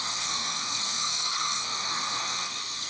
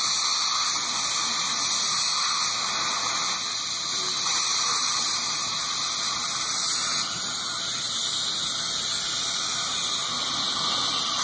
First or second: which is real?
second